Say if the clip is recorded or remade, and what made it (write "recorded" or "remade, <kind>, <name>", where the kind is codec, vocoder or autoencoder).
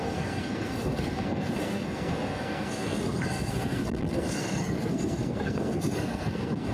remade, codec, SNAC